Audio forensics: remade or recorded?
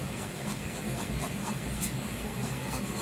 remade